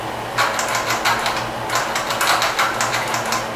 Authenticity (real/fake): real